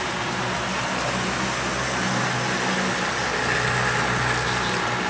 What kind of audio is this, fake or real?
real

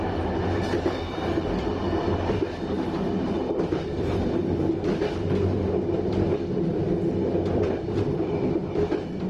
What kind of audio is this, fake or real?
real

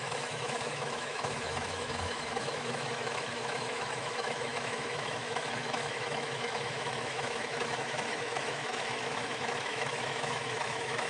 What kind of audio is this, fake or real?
fake